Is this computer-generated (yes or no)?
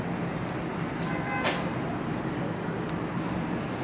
no